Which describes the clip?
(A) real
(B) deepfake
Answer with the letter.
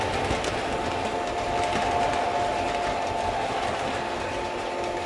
A